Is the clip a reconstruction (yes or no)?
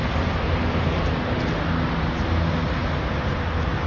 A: no